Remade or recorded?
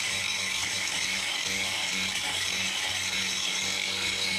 remade